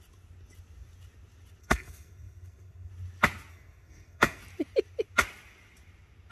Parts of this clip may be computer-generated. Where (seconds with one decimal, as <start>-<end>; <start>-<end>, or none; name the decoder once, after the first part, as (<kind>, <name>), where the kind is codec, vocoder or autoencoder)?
1.6-2.9 (codec, SNAC); 3.5-4.4